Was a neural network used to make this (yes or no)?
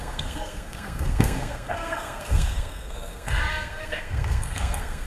yes